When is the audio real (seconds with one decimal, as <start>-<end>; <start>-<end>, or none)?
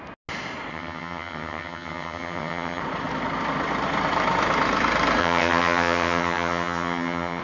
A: 0.0-0.7; 2.8-5.2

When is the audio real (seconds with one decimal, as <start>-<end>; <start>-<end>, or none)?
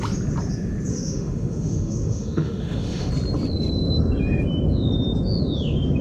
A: 0.0-0.9; 3.1-6.0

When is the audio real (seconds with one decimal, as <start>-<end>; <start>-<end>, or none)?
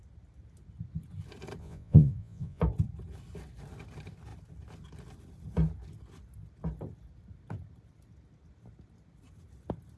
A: 0.0-1.6; 2.6-10.0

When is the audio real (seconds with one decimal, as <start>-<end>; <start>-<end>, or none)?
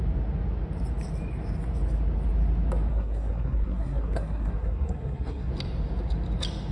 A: 0.0-2.9; 5.5-6.7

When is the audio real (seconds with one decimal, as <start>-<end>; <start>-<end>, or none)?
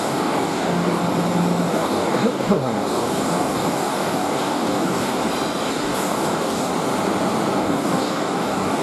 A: 1.0-1.7; 5.2-5.7; 6.7-7.6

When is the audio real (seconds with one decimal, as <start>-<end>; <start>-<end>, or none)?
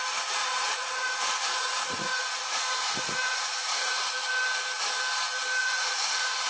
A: 0.0-0.4; 4.3-5.6